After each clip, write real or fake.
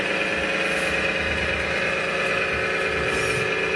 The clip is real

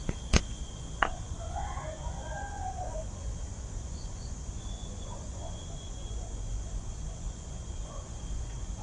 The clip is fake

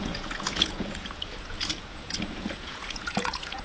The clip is fake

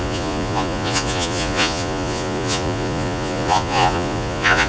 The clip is fake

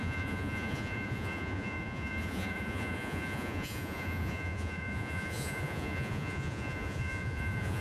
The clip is fake